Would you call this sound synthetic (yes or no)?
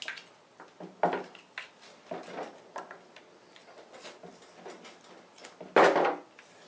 no